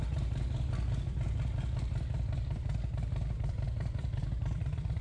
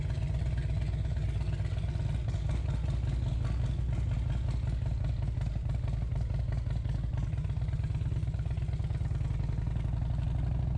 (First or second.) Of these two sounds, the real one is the second